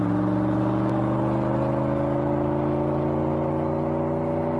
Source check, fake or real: real